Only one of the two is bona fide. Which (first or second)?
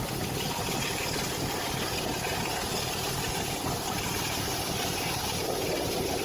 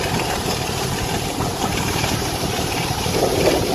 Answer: first